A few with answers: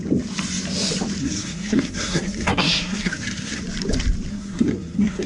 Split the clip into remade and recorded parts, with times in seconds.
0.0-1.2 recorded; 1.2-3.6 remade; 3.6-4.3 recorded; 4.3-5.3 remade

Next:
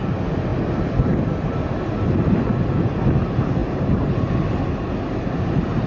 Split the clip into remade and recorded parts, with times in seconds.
0.0-0.5 recorded; 0.5-1.9 remade; 1.9-5.9 recorded

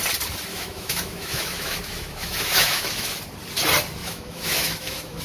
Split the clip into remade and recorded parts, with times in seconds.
0.0-0.5 recorded; 0.5-3.2 remade; 3.2-4.0 recorded; 4.0-5.2 remade

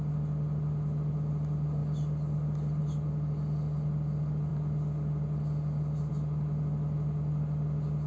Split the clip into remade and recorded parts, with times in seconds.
0.0-8.1 recorded